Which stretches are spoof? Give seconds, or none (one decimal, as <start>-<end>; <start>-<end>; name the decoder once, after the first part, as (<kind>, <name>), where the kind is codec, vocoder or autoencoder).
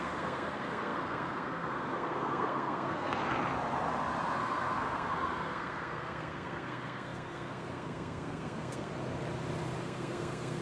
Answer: 0.0-3.2 (codec, SNAC); 4.4-8.9; 9.8-10.6